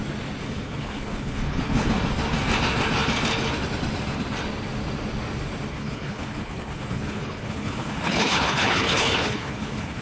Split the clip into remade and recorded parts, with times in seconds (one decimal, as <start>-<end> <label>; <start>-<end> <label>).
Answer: 0.0-0.4 recorded; 0.4-1.9 remade; 1.9-5.7 recorded; 5.7-10.0 remade

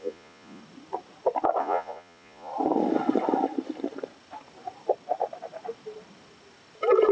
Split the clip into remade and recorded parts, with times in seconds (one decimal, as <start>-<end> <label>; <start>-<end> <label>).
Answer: 0.0-0.6 remade; 0.6-1.6 recorded; 1.6-2.5 remade; 2.5-7.1 recorded

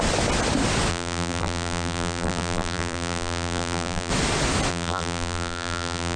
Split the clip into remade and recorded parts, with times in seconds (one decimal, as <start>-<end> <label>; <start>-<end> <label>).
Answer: 0.0-0.9 recorded; 0.9-4.1 remade; 4.1-4.7 recorded; 4.7-6.2 remade

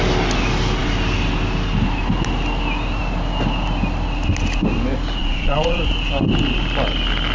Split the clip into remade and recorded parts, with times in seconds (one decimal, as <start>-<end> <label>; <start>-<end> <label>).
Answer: 0.0-5.2 recorded; 5.2-5.8 remade; 5.8-7.3 recorded

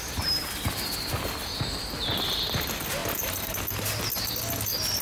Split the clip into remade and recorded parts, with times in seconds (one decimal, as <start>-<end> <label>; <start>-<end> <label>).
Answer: 0.0-5.0 recorded